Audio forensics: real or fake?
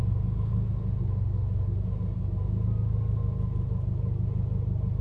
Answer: real